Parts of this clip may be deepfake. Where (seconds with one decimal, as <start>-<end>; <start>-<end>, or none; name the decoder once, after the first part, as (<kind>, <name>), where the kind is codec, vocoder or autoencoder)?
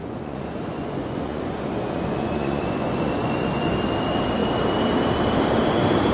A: 0.0-3.7 (vocoder, Vocos)